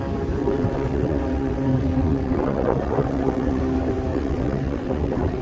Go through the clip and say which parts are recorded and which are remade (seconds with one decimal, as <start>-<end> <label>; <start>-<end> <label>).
0.0-0.4 recorded; 0.4-3.6 remade; 3.6-4.1 recorded; 4.1-5.4 remade